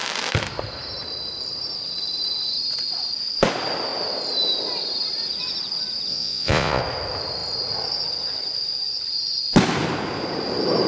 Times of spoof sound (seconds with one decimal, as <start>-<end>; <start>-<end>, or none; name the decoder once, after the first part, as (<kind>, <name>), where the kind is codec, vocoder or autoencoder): 6.1-6.8 (vocoder, Vocos)